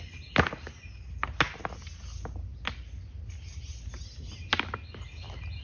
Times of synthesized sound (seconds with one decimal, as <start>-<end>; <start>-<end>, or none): none